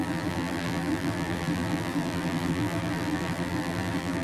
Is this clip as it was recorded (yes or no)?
no